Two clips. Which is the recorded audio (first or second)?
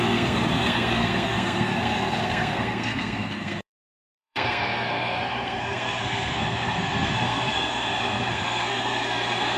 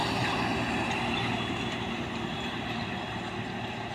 second